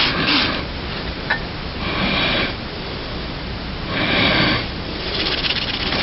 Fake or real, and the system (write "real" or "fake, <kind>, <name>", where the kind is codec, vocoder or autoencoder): real